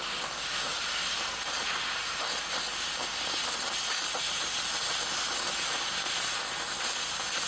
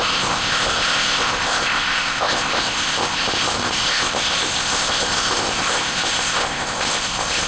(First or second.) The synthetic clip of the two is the second